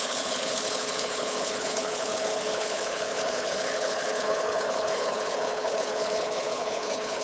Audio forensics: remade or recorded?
remade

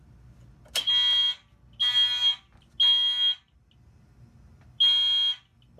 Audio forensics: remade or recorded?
recorded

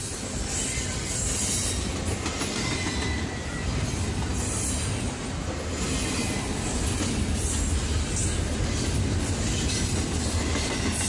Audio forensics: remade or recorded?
recorded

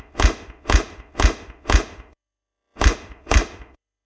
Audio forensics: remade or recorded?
remade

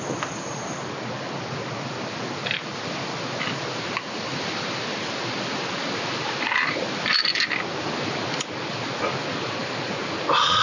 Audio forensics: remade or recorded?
recorded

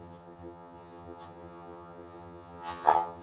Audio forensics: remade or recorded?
remade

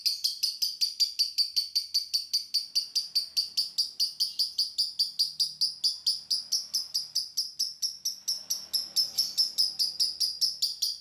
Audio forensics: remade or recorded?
recorded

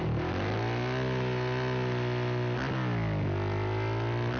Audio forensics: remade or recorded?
recorded